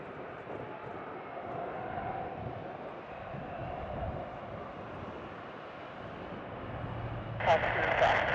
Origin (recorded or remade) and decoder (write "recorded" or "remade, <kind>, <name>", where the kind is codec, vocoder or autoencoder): recorded